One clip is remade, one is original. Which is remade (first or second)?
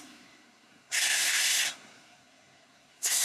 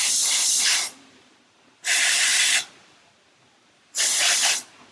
first